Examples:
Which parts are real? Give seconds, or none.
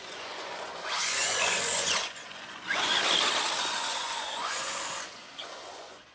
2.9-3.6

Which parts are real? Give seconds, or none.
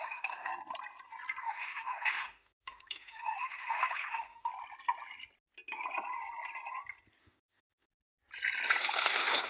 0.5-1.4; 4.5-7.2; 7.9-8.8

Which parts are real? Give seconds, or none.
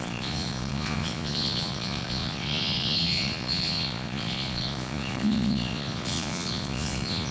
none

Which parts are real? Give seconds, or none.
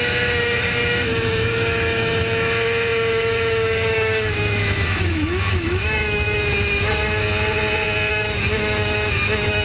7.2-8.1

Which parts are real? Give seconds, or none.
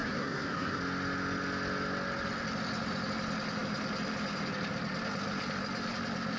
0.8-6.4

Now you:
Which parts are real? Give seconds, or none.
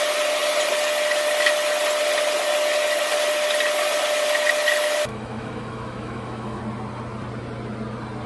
0.0-5.1; 6.6-8.3